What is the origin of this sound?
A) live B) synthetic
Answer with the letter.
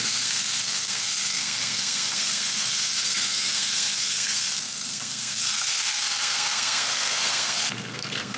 B